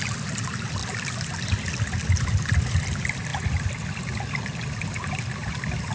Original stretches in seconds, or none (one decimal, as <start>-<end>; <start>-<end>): 0.0-5.9